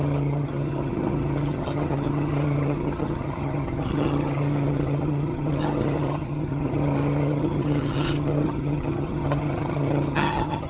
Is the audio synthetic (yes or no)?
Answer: yes